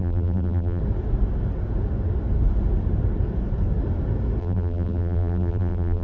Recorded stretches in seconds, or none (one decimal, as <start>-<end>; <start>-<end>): 0.8-4.4